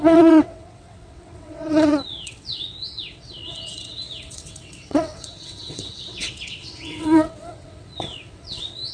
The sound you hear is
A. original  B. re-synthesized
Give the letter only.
B